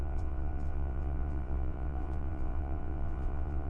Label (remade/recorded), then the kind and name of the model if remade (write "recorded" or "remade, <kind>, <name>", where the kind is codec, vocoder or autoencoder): remade, vocoder, WaveNeXt